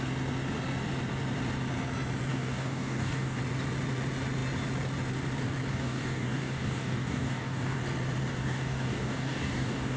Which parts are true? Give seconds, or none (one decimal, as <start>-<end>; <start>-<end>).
0.0-2.3; 3.4-5.7; 7.8-8.3